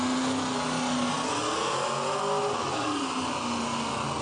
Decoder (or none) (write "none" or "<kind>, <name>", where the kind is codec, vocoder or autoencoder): none